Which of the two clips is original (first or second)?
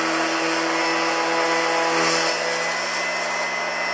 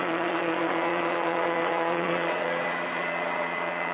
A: first